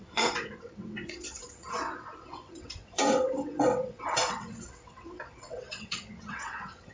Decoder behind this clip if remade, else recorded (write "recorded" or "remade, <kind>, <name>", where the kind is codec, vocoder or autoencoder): remade, vocoder, WaveNeXt